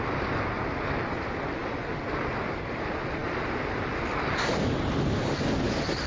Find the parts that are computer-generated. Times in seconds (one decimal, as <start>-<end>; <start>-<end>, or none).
none